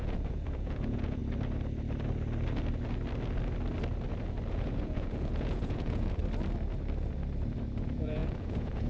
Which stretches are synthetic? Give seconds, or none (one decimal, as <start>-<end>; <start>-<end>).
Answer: 0.0-1.2; 4.5-6.2; 7.8-8.9